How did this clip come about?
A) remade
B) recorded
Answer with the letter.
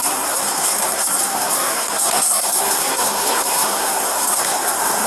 A